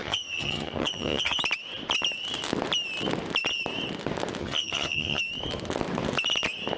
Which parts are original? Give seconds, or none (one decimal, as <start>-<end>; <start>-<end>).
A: 1.4-4.4; 5.2-6.8